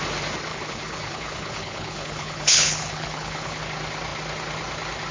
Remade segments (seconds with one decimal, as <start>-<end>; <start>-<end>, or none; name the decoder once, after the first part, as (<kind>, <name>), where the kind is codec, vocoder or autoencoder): 0.5-3.6 (codec, HILCodec)